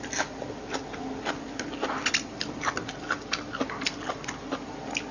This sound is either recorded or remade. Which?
recorded